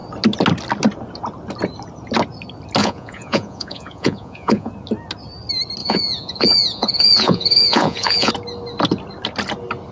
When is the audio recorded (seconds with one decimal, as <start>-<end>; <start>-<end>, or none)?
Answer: 0.0-2.8; 4.7-5.8; 8.3-9.9